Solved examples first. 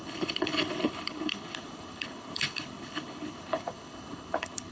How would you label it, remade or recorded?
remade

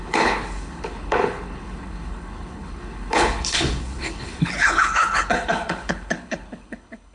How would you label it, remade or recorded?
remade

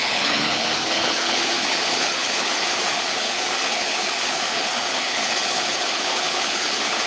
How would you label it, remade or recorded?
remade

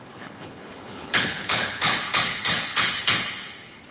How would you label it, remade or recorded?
remade